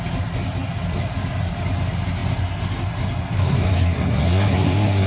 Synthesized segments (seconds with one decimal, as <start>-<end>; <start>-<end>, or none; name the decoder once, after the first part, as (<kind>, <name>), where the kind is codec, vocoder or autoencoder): 3.4-5.1 (codec, SNAC)